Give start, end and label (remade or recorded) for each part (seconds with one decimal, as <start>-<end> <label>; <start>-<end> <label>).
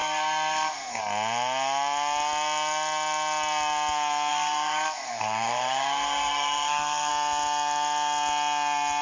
0.0-1.0 remade; 1.0-4.3 recorded; 4.3-7.1 remade; 7.1-9.0 recorded